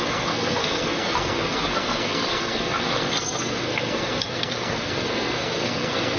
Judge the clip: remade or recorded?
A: remade